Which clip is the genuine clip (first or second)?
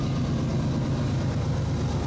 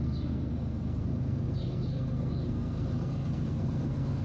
first